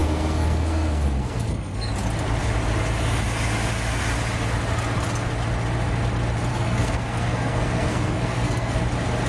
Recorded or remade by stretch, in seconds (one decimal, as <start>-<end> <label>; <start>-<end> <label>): 0.0-1.9 remade; 1.9-6.5 recorded; 6.5-8.8 remade; 8.8-9.3 recorded